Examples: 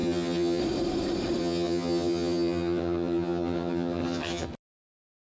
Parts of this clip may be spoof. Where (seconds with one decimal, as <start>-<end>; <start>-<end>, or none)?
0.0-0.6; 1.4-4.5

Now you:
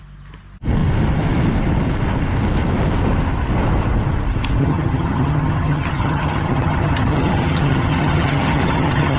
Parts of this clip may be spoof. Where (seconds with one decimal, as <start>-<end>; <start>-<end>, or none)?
4.6-9.2

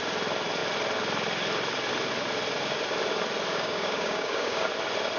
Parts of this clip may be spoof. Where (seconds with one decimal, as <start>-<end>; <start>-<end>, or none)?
3.5-4.7

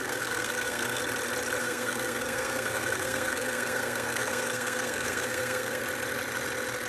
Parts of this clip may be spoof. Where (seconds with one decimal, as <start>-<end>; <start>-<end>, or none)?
0.0-1.0; 1.6-5.8

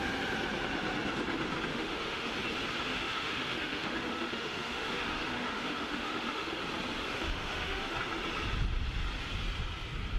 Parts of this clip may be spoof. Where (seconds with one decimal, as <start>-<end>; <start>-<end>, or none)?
1.7-2.3; 2.9-6.6; 7.0-8.0

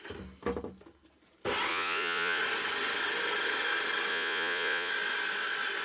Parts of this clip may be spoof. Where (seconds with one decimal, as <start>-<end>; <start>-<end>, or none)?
1.7-2.4; 4.1-4.9

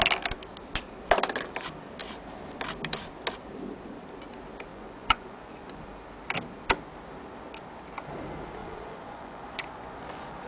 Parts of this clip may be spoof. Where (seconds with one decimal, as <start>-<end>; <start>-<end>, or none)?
4.7-5.8; 8.6-10.5